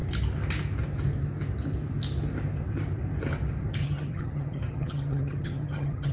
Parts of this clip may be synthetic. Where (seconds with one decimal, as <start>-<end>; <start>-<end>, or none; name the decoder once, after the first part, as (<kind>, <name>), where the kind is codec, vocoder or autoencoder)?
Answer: 3.8-6.1 (vocoder, HiFi-GAN)